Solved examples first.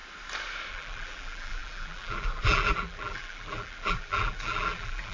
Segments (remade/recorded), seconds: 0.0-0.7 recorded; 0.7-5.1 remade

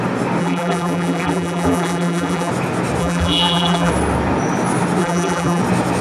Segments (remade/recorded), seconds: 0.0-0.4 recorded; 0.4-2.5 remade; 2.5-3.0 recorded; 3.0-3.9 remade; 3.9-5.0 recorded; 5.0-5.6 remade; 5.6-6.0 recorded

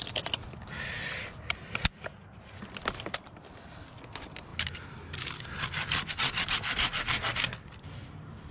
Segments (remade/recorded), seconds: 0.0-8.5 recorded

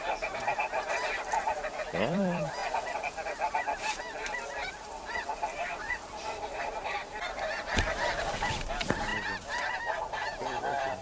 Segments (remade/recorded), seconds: 0.0-2.6 remade; 2.6-4.7 recorded; 4.7-11.0 remade

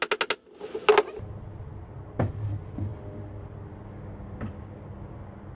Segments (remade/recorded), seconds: 0.0-5.5 recorded